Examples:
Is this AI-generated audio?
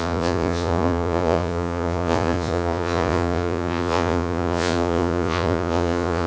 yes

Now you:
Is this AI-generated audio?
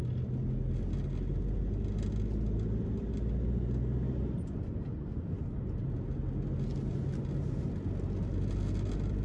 no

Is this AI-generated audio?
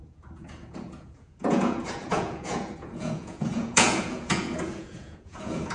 yes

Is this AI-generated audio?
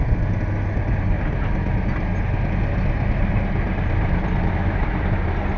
no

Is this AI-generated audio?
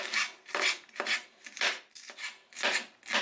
no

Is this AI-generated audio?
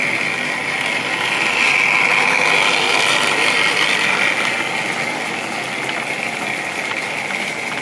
no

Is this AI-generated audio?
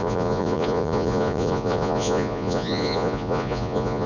yes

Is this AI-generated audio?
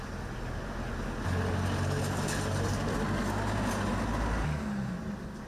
no